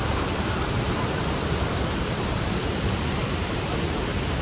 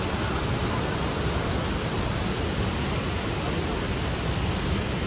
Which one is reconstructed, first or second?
first